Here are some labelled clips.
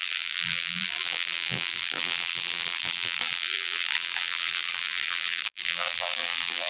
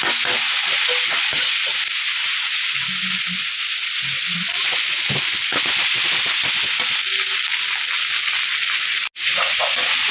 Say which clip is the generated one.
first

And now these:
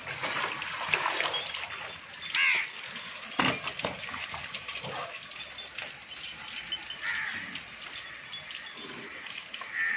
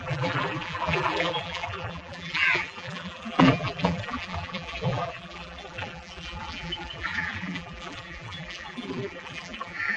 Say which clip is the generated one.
second